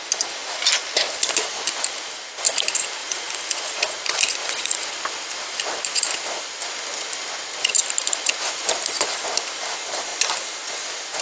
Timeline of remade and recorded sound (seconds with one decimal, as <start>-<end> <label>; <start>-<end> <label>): 0.0-3.0 recorded; 3.0-4.0 remade; 4.0-4.4 recorded; 4.4-4.9 remade; 4.9-11.2 recorded